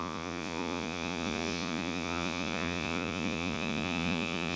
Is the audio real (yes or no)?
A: no